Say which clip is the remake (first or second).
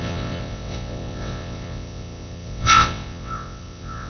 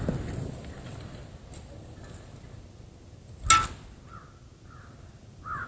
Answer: first